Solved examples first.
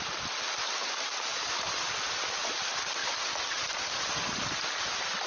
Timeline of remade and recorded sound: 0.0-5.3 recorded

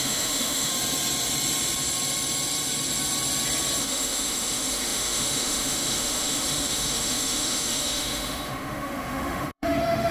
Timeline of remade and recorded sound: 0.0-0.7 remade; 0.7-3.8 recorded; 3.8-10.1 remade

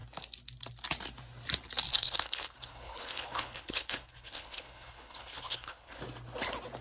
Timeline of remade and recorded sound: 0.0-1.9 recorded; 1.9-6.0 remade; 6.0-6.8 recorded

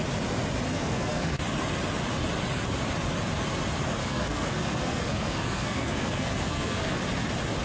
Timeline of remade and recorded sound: 0.0-0.7 recorded; 0.7-1.4 remade; 1.4-4.0 recorded; 4.0-7.0 remade; 7.0-7.6 recorded